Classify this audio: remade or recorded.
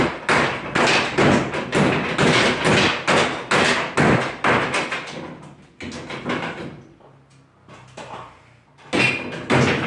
recorded